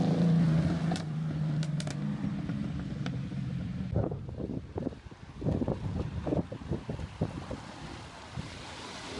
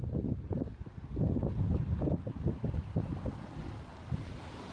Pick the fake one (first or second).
first